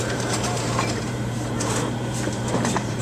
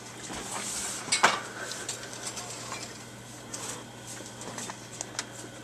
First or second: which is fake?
first